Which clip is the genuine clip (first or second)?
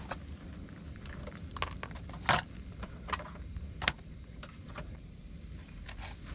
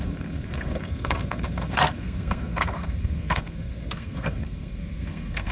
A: first